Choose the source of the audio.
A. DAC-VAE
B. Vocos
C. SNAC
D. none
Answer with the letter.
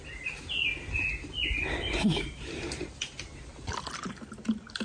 D